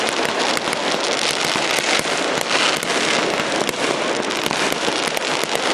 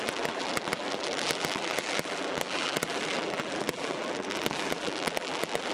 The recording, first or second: first